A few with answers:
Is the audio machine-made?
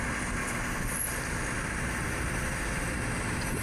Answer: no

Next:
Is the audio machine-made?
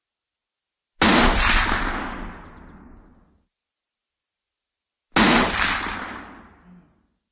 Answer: no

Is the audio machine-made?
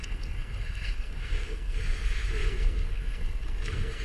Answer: yes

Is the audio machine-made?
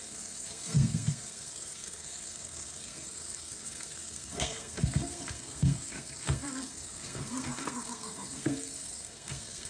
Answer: yes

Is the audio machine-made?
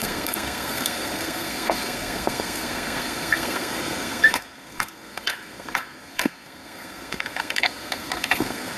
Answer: yes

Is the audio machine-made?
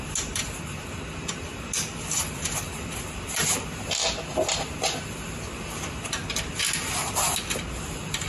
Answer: no